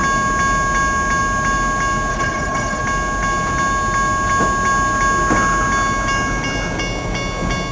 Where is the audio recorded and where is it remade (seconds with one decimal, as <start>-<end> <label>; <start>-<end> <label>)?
0.0-2.1 recorded; 2.1-2.8 remade; 2.8-7.7 recorded

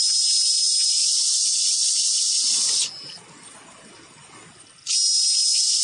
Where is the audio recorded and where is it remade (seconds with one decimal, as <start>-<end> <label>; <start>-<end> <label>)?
0.0-5.8 recorded

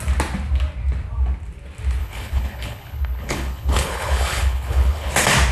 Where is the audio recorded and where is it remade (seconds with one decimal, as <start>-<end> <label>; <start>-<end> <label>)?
0.0-2.0 recorded; 2.0-5.1 remade; 5.1-5.5 recorded

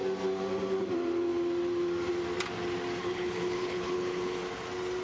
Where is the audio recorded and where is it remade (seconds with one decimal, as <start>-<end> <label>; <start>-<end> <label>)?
0.0-3.0 recorded; 3.0-4.4 remade; 4.4-5.0 recorded

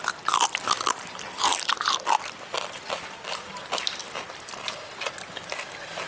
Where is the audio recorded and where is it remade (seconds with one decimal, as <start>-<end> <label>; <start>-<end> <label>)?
0.0-6.1 recorded

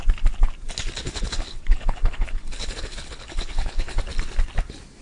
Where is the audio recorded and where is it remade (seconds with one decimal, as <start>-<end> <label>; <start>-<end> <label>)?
0.0-1.0 recorded; 1.0-4.0 remade; 4.0-5.0 recorded

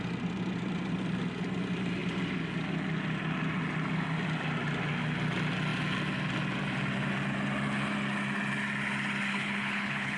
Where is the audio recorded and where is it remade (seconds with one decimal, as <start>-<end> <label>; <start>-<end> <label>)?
0.0-9.3 recorded; 9.3-10.2 remade